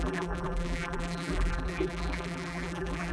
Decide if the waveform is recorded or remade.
remade